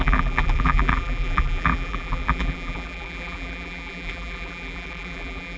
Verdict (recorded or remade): remade